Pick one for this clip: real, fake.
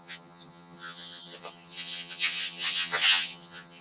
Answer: fake